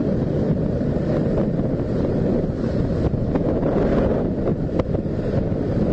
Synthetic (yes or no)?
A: no